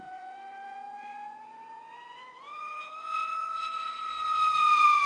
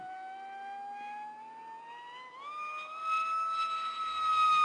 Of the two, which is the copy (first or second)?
first